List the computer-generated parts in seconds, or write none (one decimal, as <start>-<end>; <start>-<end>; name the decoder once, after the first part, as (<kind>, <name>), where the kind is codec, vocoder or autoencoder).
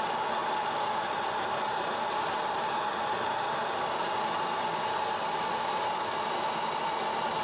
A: none